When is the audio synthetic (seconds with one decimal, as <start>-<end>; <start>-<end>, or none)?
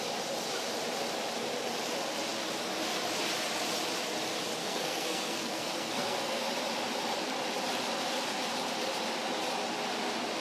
4.6-6.4